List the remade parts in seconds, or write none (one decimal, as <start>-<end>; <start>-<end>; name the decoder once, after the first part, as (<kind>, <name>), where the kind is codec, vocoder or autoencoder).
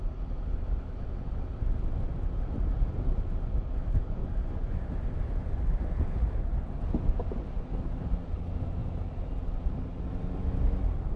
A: 4.2-4.9 (vocoder, Vocos)